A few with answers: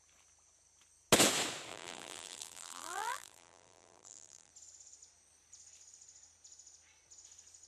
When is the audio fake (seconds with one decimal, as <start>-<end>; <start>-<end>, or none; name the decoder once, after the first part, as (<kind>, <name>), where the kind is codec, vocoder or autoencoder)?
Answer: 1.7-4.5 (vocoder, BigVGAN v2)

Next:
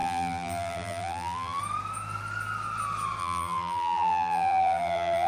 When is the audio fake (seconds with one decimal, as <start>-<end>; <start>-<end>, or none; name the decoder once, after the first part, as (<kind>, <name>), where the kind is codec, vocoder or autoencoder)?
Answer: 0.0-1.6 (vocoder, BigVGAN v2); 3.2-5.3

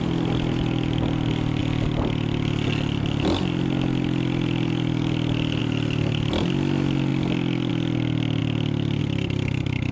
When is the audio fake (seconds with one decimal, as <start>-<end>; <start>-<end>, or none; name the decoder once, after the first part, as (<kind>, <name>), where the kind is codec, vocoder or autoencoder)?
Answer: none

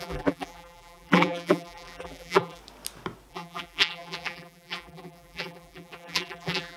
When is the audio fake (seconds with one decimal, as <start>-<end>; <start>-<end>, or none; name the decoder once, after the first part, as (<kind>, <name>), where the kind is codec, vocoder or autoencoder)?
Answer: 0.0-2.6 (vocoder, BigVGAN v2); 3.3-6.8

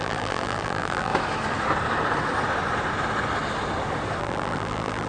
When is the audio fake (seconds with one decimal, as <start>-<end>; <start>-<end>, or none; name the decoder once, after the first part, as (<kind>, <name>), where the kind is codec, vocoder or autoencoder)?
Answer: 0.0-1.1 (vocoder, BigVGAN v2); 4.2-5.1

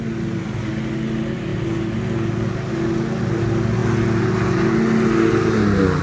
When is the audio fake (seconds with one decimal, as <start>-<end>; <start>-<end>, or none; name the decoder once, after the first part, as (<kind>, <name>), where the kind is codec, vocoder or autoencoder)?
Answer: none

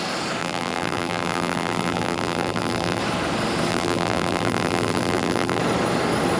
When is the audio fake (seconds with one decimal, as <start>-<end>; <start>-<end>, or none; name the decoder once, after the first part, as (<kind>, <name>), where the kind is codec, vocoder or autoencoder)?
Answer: 0.4-3.0 (vocoder, BigVGAN v2); 3.7-5.6

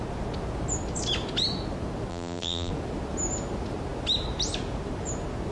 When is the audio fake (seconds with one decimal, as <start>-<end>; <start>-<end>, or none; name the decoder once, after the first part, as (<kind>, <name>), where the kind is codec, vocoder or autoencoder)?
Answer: 2.1-2.7 (vocoder, BigVGAN v2)